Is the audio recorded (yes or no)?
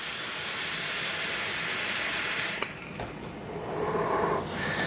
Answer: yes